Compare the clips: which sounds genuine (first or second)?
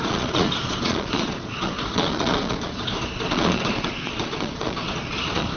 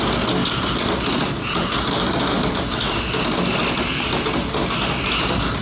second